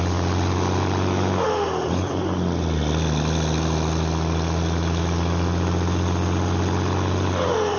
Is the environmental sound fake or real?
real